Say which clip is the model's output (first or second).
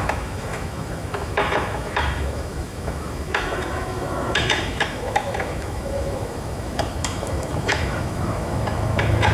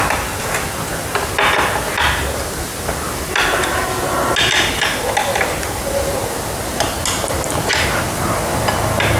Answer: first